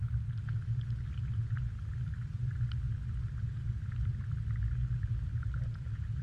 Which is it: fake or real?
real